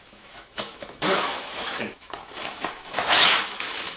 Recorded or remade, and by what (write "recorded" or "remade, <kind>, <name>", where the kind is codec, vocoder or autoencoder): remade, autoencoder, DAC-VAE